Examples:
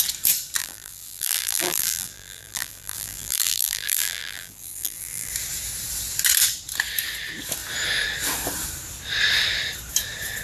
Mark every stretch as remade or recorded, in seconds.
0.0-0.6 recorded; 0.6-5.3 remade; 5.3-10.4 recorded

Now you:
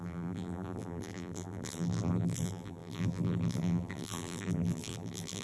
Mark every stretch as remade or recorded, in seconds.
0.0-5.4 remade

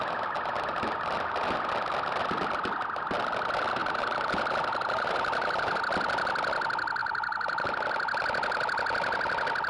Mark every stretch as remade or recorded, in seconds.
0.0-3.8 recorded; 3.8-5.8 remade; 5.8-7.0 recorded; 7.0-7.7 remade; 7.7-9.7 recorded